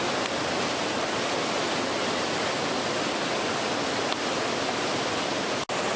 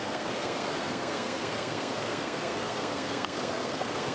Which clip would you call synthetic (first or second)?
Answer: second